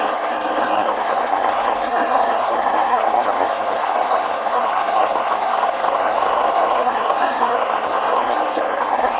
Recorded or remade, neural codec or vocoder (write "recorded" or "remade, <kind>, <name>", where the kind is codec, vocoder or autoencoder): remade, codec, SNAC